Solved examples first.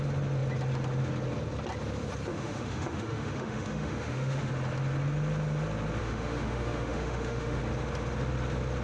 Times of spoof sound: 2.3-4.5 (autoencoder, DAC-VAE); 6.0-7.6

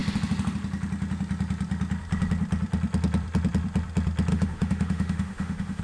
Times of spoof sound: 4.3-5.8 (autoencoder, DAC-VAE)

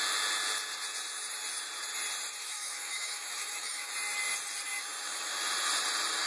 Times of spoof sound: 2.4-3.9 (autoencoder, DAC-VAE); 4.7-5.3

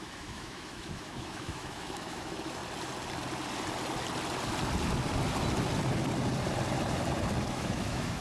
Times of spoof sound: 0.0-2.6 (autoencoder, DAC-VAE); 7.5-8.2

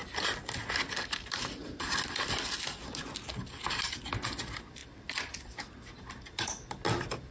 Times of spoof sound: none